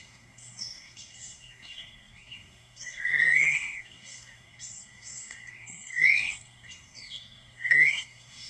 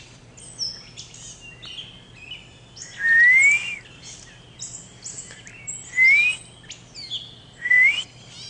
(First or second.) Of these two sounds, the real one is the second